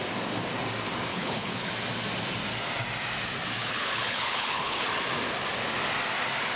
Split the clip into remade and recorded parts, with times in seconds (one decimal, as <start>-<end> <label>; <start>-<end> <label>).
0.0-1.1 recorded; 1.1-1.7 remade; 1.7-3.6 recorded; 3.6-4.9 remade; 4.9-6.6 recorded